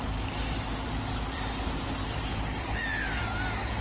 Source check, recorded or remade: recorded